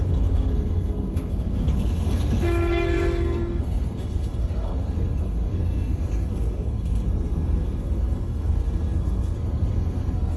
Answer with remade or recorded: remade